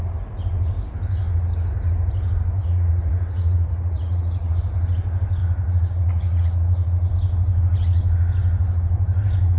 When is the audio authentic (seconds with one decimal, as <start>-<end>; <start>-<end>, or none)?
0.0-2.6; 4.5-5.4; 7.1-9.6